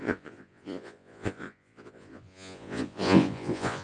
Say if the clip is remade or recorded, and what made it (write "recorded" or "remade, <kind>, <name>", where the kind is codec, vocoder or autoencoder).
remade, vocoder, Vocos